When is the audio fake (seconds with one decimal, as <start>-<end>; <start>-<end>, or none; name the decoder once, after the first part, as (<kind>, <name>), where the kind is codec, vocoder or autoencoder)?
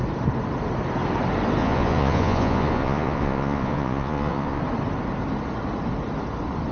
1.6-4.6 (vocoder, Vocos)